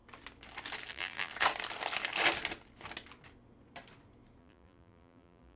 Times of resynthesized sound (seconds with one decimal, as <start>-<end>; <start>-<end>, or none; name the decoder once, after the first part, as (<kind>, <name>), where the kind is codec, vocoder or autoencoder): 0.9-1.3 (vocoder, BigVGAN v2); 4.4-5.6